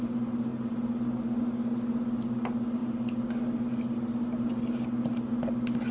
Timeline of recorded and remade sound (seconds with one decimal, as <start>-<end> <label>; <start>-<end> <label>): 0.0-5.9 recorded